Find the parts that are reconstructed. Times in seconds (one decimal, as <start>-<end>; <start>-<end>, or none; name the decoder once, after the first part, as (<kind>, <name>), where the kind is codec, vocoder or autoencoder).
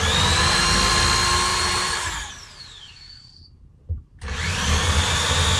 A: 1.5-3.7 (vocoder, BigVGAN v2)